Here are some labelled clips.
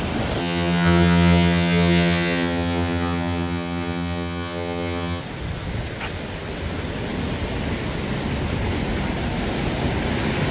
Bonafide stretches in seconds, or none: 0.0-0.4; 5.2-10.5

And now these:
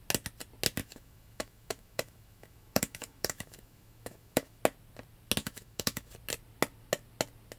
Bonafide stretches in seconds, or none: 0.0-0.8; 4.6-5.4; 6.1-7.6

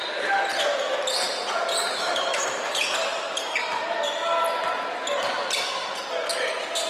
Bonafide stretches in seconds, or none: 0.0-1.9; 2.6-6.9

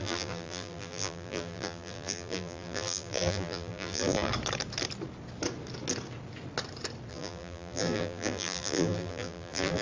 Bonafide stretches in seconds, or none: 4.3-7.1